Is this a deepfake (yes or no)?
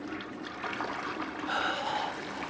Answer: no